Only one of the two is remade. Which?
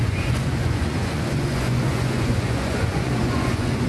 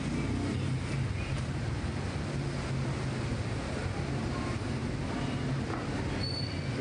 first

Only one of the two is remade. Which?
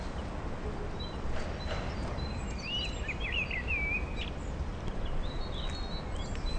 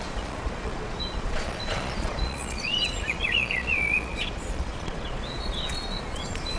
second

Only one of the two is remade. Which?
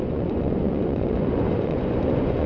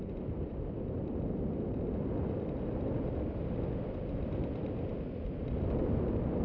first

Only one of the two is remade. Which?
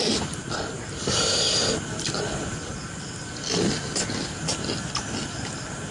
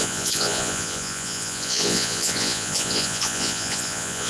second